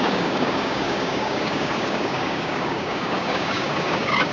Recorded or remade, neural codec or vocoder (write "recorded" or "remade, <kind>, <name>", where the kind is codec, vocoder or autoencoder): remade, codec, DAC